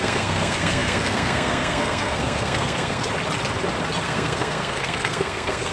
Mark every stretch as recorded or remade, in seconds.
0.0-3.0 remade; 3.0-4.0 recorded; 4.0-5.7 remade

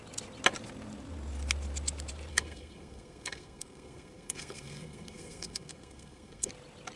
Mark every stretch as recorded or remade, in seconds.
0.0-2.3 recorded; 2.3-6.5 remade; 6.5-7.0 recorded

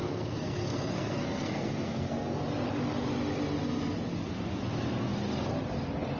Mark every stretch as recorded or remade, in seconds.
0.0-2.4 remade; 2.4-6.2 recorded